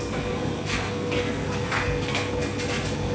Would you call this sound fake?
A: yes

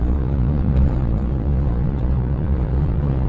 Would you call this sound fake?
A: yes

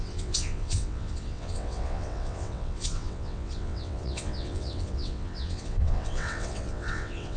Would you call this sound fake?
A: yes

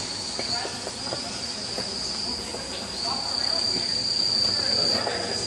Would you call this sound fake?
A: no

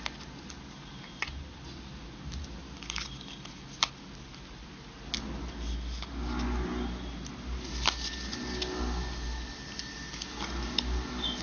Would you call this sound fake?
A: no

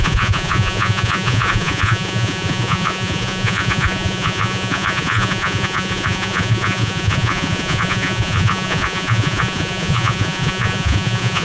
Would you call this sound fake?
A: yes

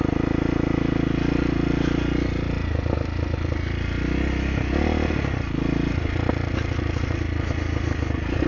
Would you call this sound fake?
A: no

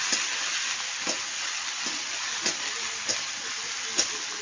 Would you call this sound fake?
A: no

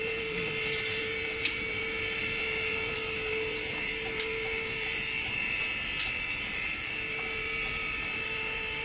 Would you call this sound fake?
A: yes